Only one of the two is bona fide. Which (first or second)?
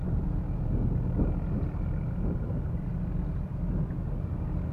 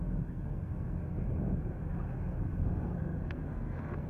first